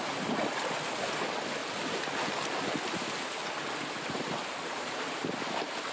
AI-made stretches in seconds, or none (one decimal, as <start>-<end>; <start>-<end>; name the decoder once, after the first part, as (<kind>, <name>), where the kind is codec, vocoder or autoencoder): none